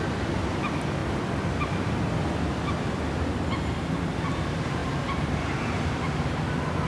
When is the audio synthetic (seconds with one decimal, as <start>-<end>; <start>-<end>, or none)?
none